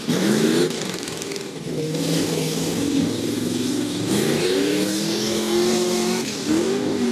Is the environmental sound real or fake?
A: fake